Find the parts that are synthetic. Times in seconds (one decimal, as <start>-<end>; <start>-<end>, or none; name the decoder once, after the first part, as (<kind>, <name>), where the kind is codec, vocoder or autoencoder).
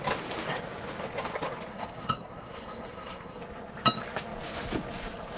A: 1.7-3.4 (codec, SNAC)